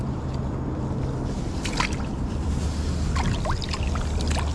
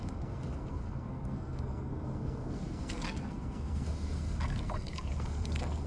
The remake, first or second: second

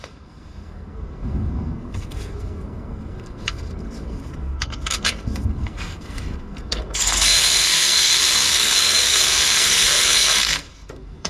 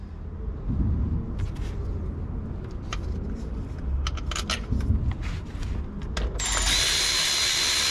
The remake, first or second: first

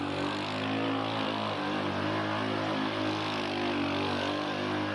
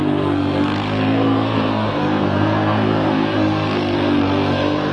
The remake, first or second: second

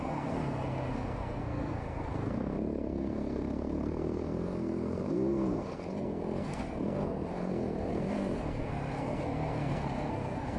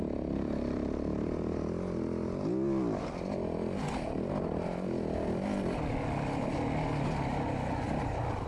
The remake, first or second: first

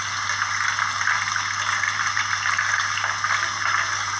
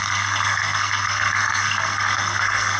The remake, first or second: second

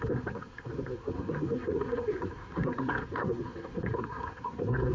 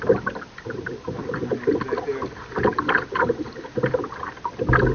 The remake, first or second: first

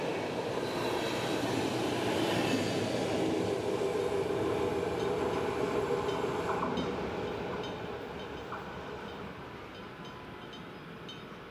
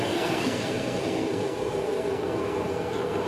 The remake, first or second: second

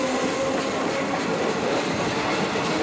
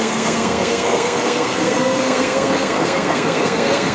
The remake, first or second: second